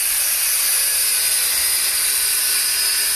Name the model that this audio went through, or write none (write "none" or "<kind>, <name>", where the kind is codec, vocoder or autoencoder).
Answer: none